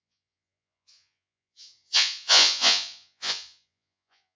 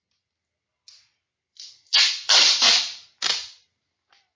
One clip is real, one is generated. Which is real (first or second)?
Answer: second